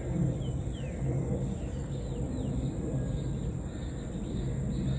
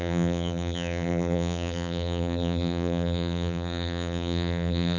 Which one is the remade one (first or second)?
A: second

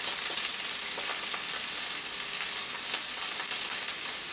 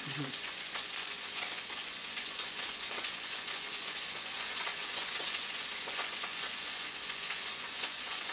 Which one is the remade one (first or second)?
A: second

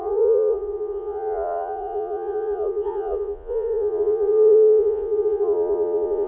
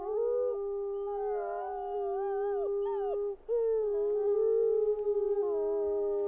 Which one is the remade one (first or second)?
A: first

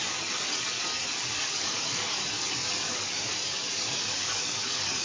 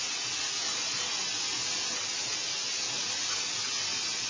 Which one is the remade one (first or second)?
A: first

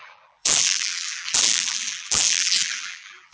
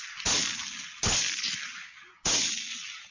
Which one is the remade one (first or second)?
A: first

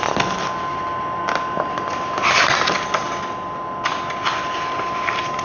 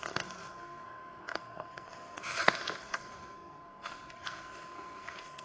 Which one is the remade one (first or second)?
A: second